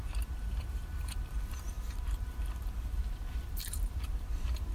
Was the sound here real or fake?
fake